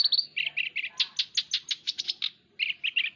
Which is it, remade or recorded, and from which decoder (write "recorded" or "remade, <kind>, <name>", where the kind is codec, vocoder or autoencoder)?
recorded